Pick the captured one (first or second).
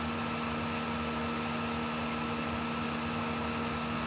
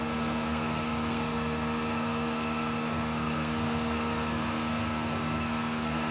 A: first